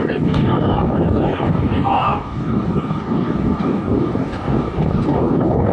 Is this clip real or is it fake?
fake